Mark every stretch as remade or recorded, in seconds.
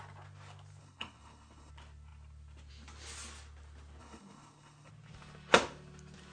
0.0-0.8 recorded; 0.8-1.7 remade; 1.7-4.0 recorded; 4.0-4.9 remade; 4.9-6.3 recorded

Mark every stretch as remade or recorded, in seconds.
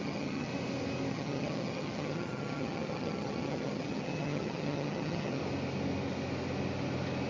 0.0-0.5 remade; 0.5-1.1 recorded; 1.1-5.4 remade; 5.4-7.3 recorded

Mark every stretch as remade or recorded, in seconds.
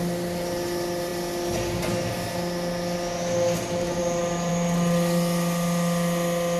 0.0-6.6 recorded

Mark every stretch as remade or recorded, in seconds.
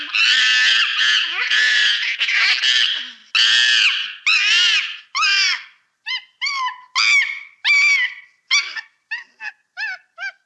0.0-0.9 recorded; 0.9-2.5 remade; 2.5-10.5 recorded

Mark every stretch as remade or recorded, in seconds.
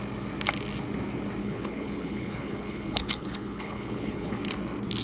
0.0-1.4 recorded; 1.4-4.4 remade; 4.4-5.0 recorded